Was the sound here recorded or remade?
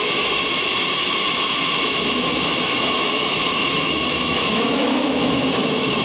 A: remade